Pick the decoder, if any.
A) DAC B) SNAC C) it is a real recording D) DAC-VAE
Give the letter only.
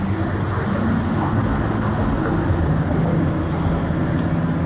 C